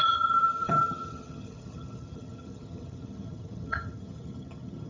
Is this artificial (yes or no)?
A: yes